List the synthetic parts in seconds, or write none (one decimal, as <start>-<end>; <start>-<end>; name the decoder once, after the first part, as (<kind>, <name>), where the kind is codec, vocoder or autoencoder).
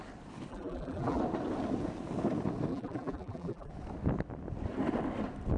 0.5-1.2 (vocoder, BigVGAN v2); 2.7-3.7